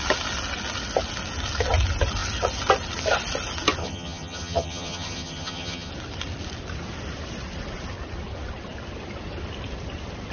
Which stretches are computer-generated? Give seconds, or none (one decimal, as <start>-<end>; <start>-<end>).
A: 3.8-5.9